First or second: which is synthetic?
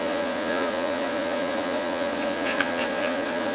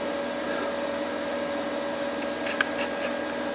first